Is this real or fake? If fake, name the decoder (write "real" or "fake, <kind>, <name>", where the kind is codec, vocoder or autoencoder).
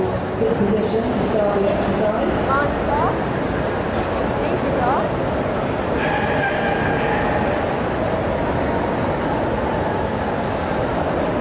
real